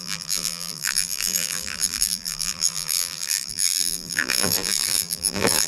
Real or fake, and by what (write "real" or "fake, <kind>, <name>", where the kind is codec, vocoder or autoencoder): fake, vocoder, BigVGAN v2